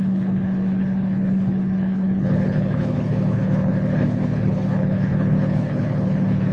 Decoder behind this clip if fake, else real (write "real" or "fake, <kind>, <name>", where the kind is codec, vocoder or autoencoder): fake, codec, HILCodec